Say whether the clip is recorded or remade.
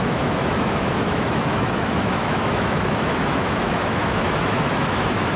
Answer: remade